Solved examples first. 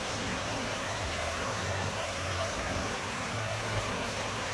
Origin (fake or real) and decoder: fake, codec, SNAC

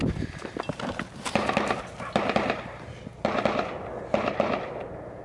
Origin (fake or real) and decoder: real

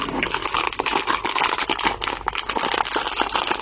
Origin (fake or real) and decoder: real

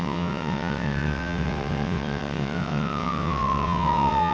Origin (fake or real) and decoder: fake, vocoder, WaveNeXt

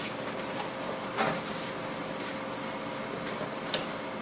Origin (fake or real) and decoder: real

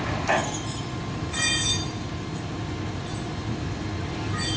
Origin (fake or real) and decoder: real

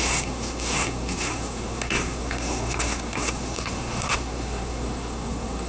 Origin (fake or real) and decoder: fake, codec, SNAC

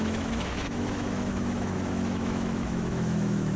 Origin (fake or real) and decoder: fake, autoencoder, DAC-VAE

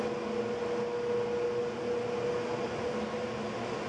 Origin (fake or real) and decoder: real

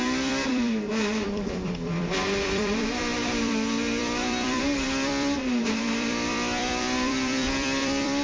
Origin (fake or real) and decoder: fake, vocoder, BigVGAN v2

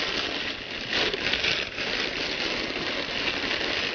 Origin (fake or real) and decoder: real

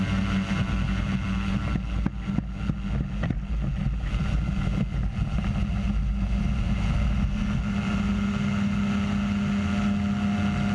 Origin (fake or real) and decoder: real